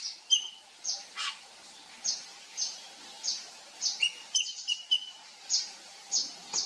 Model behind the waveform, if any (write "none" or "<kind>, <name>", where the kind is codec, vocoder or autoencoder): none